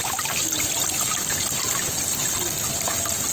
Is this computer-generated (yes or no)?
no